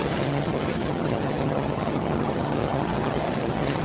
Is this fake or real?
fake